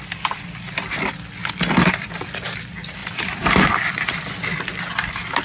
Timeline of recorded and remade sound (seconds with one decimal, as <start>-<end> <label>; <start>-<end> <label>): 0.0-1.4 recorded; 1.4-2.3 remade; 2.3-3.0 recorded; 3.0-4.2 remade; 4.2-5.4 recorded